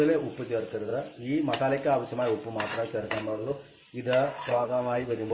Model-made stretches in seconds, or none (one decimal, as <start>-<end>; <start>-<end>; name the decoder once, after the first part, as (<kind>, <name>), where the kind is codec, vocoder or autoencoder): 3.0-3.6 (codec, SNAC); 4.5-5.3